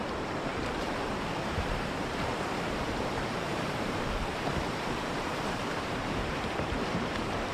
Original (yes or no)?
no